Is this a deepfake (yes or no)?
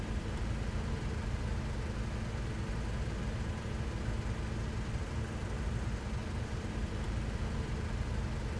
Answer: no